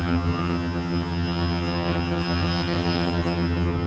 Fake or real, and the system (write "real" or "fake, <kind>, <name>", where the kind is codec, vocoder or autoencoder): fake, vocoder, HiFi-GAN